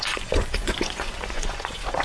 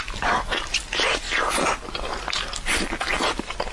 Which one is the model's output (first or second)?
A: first